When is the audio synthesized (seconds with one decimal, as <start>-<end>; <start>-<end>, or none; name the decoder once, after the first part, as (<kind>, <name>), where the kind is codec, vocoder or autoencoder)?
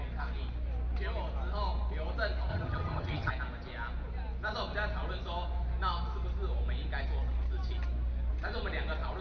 2.5-3.3 (vocoder, HiFi-GAN)